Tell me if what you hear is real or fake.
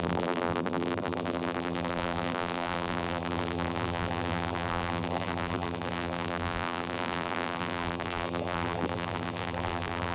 fake